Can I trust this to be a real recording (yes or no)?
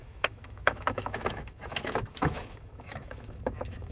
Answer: no